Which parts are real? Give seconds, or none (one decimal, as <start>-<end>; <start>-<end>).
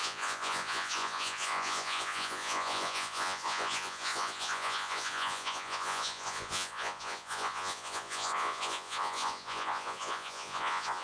none